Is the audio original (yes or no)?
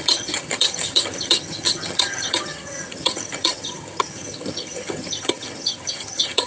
no